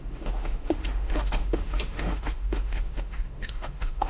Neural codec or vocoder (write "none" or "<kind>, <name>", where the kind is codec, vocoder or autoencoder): autoencoder, DAC-VAE